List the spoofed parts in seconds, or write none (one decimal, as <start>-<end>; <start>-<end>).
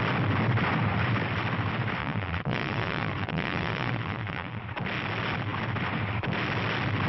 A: 2.0-4.6